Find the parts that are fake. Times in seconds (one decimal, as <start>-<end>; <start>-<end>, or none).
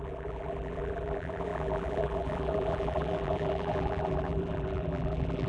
0.0-5.5